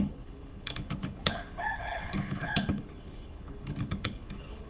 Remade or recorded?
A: remade